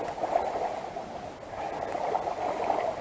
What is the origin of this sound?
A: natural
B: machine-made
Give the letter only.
A